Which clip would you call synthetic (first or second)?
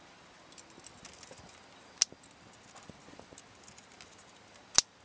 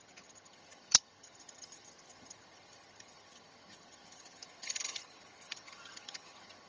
second